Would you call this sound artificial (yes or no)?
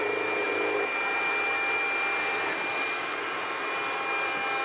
no